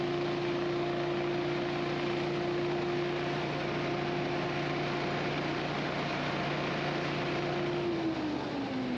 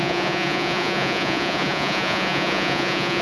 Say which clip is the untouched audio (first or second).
first